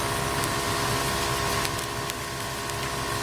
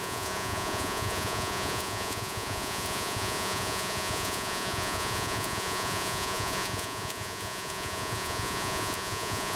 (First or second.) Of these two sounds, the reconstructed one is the second